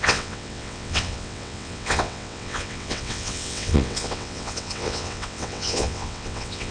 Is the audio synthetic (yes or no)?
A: yes